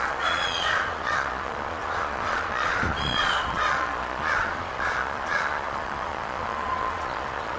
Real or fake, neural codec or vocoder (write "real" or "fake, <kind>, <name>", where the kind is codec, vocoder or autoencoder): fake, vocoder, Vocos